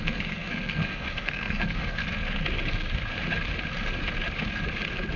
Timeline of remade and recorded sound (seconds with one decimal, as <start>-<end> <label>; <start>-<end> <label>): 0.0-2.0 remade; 2.0-5.2 recorded